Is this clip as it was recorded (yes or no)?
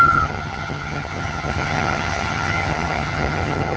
no